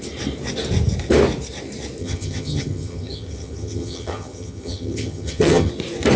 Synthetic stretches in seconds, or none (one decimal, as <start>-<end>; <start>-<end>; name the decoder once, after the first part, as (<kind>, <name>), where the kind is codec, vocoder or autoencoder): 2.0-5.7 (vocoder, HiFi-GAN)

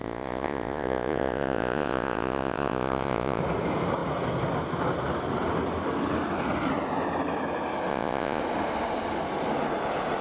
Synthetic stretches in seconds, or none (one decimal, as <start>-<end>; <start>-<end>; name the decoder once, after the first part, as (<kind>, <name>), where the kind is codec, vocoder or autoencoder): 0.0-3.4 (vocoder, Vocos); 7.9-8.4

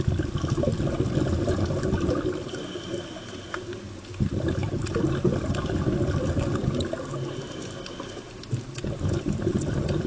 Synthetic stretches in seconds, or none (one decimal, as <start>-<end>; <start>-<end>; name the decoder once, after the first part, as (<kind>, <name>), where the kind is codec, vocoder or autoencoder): none

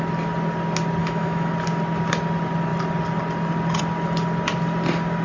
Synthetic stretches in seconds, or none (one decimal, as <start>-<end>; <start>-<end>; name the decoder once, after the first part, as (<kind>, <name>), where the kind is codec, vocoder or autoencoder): 1.0-1.5 (autoencoder, DAC-VAE)

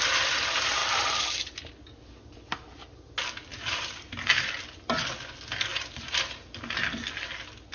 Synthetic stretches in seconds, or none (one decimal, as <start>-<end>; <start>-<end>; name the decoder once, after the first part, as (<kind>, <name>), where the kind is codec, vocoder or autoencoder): 0.8-1.7 (vocoder, BigVGAN v2); 3.5-4.5; 5.7-6.6